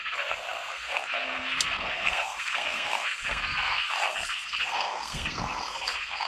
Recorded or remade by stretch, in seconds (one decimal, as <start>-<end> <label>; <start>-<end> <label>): 0.0-6.3 remade